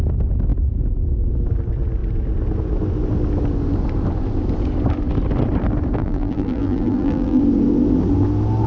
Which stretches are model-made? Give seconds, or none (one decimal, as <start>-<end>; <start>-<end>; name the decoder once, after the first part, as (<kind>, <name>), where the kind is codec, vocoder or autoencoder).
6.0-7.4 (vocoder, BigVGAN v2)